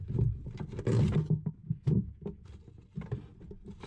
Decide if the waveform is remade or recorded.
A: recorded